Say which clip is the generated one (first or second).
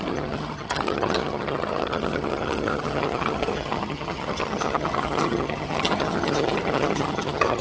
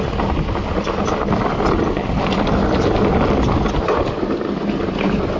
first